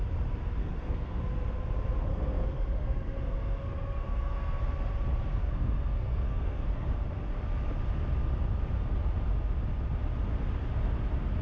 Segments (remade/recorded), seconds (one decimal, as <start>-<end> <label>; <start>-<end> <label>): 0.0-0.6 recorded; 0.6-1.2 remade; 1.2-2.1 recorded; 2.1-4.6 remade; 4.6-5.3 recorded; 5.3-6.9 remade; 6.9-11.4 recorded

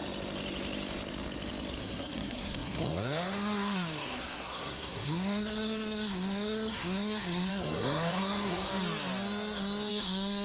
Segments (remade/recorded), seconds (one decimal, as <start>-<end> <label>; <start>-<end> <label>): 0.0-1.8 recorded; 1.8-8.7 remade; 8.7-9.9 recorded; 9.9-10.4 remade

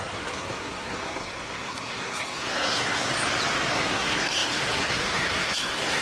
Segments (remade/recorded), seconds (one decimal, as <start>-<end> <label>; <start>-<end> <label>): 0.0-3.1 remade; 3.1-3.7 recorded; 3.7-6.0 remade